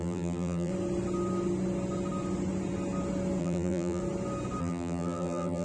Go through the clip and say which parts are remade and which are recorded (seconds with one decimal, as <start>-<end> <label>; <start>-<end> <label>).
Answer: 0.0-0.7 remade; 0.7-3.4 recorded; 3.4-4.0 remade; 4.0-4.6 recorded; 4.6-5.6 remade